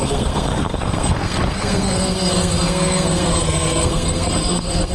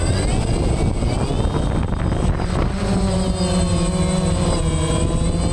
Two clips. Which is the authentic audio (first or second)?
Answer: second